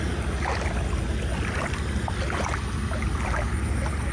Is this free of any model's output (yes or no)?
yes